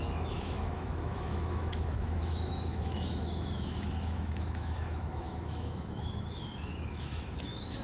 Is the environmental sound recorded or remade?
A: remade